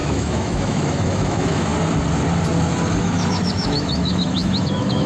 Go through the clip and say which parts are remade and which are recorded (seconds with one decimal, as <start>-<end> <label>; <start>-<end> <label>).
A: 0.0-1.7 remade; 1.7-3.0 recorded; 3.0-5.1 remade